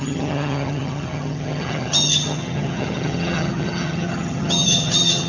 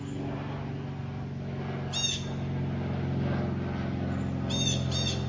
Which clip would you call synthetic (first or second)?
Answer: first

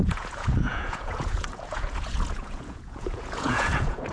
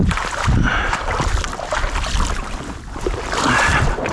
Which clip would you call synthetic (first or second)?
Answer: first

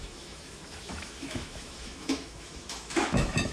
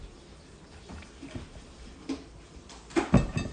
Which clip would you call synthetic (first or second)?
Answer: first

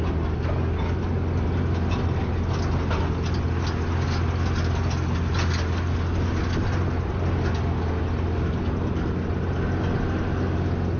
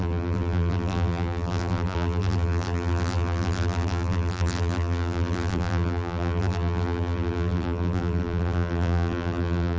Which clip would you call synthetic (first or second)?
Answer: second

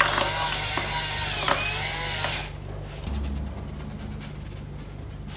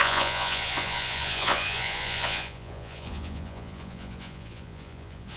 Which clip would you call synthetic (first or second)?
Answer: second